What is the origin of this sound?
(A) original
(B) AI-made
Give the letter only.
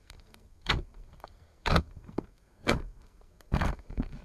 B